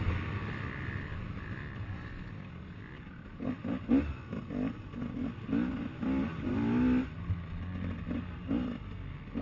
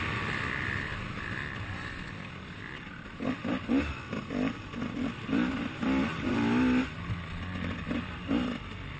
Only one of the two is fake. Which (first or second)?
second